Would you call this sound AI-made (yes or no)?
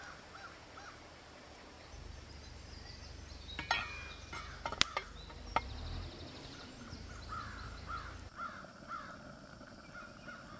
no